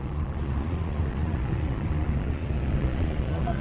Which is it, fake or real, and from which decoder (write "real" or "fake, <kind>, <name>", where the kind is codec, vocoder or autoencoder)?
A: fake, vocoder, Vocos